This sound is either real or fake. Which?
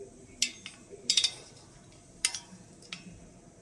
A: real